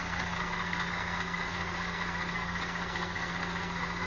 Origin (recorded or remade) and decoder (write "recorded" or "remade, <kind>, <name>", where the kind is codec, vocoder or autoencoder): remade, codec, SNAC